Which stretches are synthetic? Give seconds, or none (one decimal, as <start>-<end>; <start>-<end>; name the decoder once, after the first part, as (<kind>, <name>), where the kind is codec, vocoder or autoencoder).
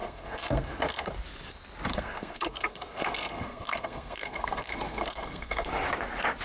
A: 0.0-1.1 (codec, SNAC); 1.9-5.7